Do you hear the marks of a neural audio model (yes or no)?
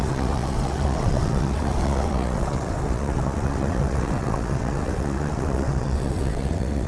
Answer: yes